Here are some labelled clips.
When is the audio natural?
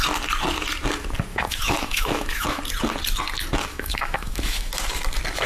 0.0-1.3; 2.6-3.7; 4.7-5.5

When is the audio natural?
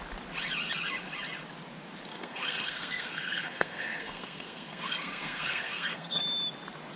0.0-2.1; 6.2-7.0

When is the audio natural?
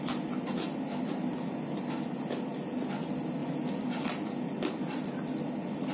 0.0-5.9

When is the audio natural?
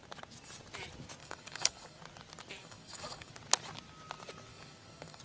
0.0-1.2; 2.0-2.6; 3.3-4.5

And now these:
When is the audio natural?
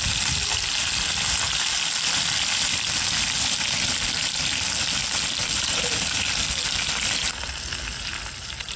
0.0-8.8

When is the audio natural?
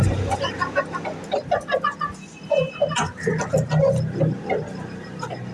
0.0-5.5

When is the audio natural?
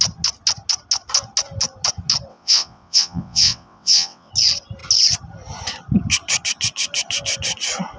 0.0-2.3; 4.3-8.0